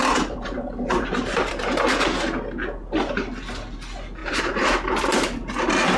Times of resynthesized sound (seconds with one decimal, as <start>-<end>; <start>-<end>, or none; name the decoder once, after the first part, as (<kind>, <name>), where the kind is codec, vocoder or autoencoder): 0.0-1.6 (vocoder, BigVGAN v2); 4.2-6.0